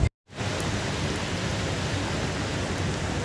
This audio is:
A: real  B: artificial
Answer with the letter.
A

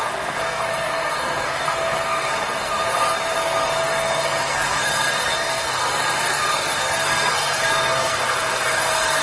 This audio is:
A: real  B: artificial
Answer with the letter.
B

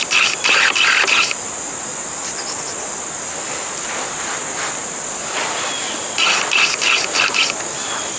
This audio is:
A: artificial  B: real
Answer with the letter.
B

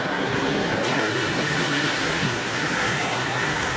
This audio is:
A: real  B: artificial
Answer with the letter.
B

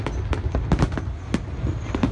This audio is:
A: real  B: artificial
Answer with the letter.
A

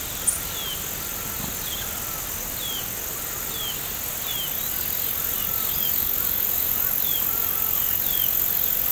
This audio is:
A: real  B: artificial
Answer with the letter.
A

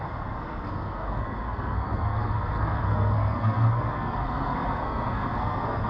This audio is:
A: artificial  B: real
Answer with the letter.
A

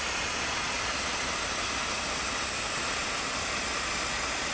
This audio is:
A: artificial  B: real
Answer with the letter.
B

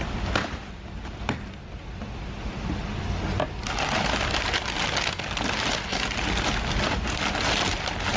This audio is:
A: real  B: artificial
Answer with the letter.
A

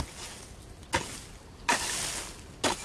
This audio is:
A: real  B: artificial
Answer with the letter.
A